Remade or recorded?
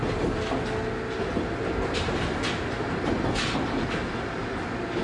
recorded